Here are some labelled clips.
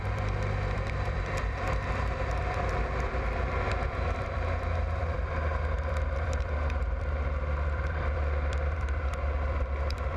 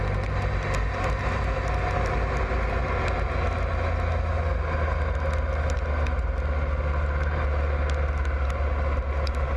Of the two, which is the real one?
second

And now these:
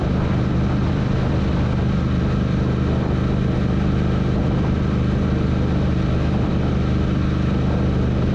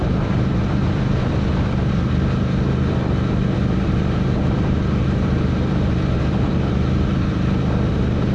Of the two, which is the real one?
first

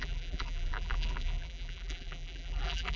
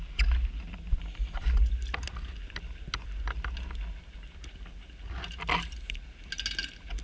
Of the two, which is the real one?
second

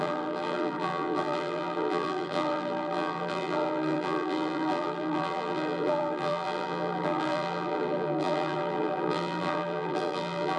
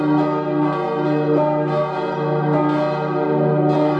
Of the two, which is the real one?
second